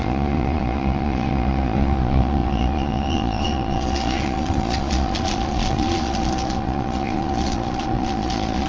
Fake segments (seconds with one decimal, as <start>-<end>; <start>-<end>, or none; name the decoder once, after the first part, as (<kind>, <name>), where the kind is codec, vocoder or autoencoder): 0.0-8.7 (vocoder, Vocos)